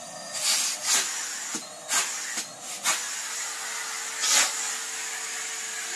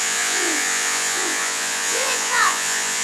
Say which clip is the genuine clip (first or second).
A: first